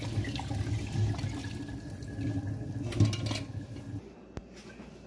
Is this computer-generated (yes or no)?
no